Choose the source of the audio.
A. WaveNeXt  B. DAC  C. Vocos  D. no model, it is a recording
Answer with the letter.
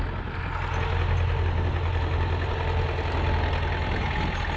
D